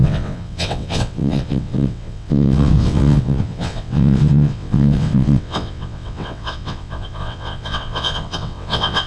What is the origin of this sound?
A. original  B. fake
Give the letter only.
B